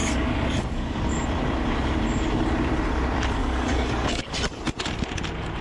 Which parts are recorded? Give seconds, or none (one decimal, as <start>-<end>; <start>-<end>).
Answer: 1.1-3.4; 4.2-5.6